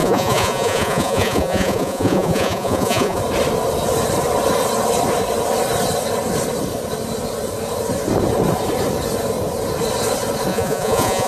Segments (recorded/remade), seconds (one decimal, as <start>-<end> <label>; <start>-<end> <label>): 0.0-3.2 remade; 3.2-10.5 recorded; 10.5-11.3 remade